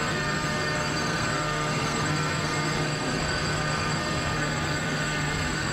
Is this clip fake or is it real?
fake